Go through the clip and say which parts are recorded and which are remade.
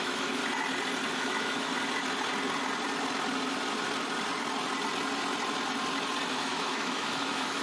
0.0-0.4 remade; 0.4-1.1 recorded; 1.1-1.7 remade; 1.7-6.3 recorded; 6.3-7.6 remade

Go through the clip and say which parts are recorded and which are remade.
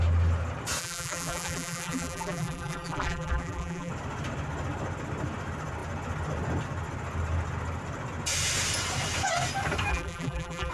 0.0-0.8 recorded; 0.8-3.9 remade; 3.9-9.9 recorded; 9.9-10.7 remade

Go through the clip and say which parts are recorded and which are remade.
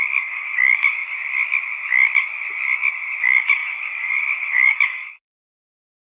0.0-1.0 remade; 1.0-3.2 recorded; 3.2-6.0 remade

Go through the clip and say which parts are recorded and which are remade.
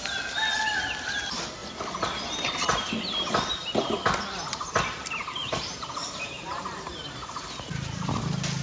0.0-5.4 recorded; 5.4-7.5 remade; 7.5-8.6 recorded